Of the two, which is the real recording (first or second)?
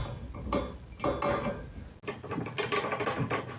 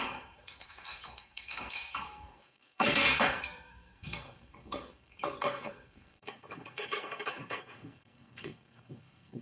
first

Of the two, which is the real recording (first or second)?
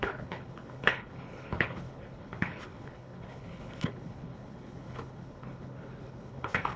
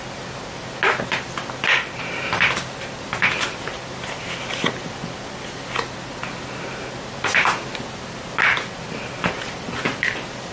second